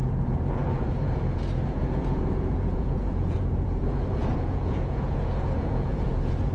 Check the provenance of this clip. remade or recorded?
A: remade